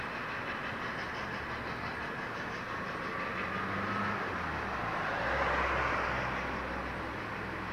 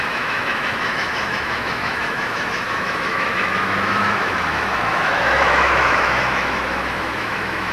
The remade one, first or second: second